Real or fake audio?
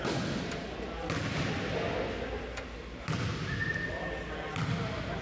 real